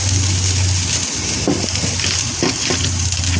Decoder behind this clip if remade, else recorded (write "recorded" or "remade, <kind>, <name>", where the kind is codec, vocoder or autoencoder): recorded